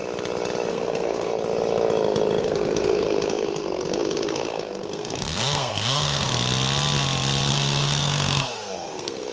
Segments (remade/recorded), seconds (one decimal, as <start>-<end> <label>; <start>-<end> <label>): 0.0-0.7 recorded; 0.7-1.3 remade; 1.3-2.4 recorded; 2.4-6.3 remade; 6.3-7.5 recorded; 7.5-9.3 remade